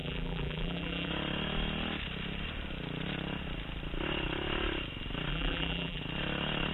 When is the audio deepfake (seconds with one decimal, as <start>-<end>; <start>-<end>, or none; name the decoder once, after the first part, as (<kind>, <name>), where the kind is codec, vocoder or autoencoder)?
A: 0.0-1.1 (vocoder, BigVGAN v2); 5.3-6.0